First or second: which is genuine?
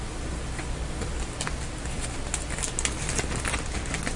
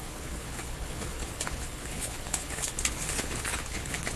first